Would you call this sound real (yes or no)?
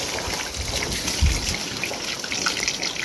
yes